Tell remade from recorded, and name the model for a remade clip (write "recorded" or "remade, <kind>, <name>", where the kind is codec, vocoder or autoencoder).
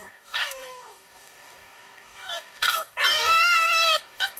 remade, codec, DAC